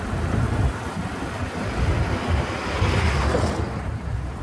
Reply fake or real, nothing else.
real